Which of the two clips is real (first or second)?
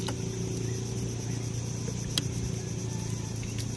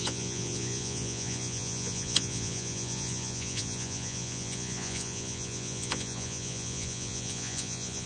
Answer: first